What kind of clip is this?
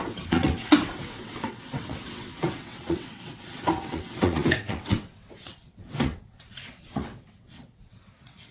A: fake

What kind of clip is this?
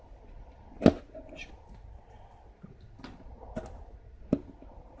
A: real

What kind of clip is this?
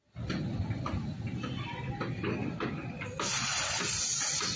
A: real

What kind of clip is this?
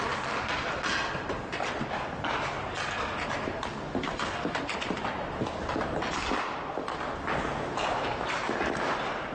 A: real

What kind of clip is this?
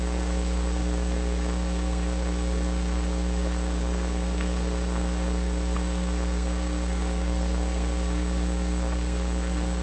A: fake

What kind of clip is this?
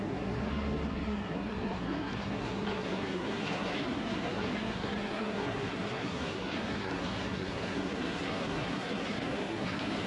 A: fake